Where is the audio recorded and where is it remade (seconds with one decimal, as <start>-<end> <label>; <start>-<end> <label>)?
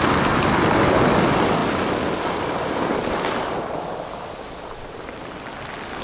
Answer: 0.0-6.0 recorded